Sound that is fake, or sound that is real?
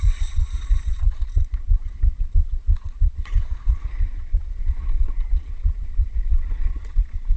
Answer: fake